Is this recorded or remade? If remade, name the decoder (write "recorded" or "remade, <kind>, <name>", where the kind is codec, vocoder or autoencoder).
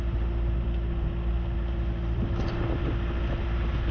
recorded